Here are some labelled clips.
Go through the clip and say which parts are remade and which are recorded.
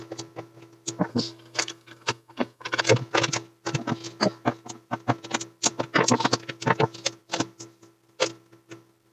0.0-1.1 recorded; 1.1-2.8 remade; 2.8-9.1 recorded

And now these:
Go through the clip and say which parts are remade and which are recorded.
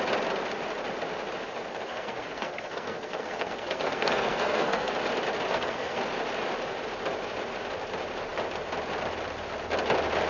0.0-1.7 recorded; 1.7-4.9 remade; 4.9-5.5 recorded; 5.5-6.0 remade; 6.0-10.3 recorded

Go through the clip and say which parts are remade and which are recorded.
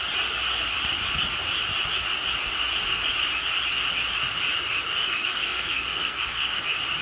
0.0-5.0 recorded; 5.0-6.6 remade; 6.6-7.0 recorded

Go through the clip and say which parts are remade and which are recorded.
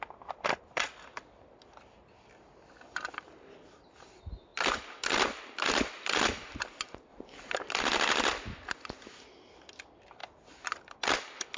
0.0-11.6 recorded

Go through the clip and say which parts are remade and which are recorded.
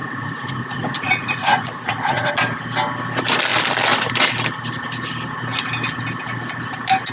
0.0-2.3 remade; 2.3-7.1 recorded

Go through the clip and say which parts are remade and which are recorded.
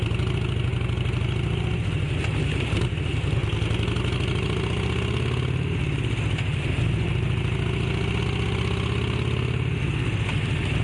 0.0-10.8 recorded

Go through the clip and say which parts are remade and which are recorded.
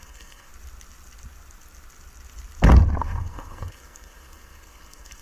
0.0-0.5 remade; 0.5-3.0 recorded; 3.0-5.2 remade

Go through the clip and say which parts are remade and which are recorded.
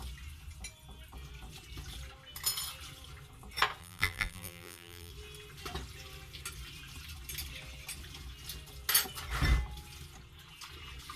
0.0-3.8 recorded; 3.8-5.1 remade; 5.1-11.2 recorded